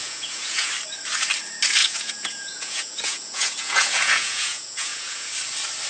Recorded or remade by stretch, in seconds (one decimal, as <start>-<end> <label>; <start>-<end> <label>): 0.0-0.7 remade; 0.7-1.8 recorded; 1.8-5.3 remade; 5.3-5.9 recorded